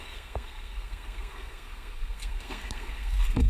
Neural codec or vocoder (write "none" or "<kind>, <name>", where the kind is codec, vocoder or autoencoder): codec, SNAC